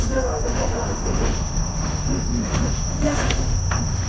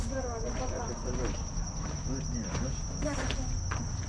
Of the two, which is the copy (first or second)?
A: first